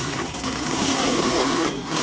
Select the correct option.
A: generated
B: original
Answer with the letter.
A